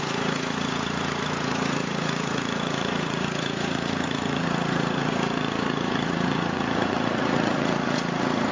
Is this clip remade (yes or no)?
yes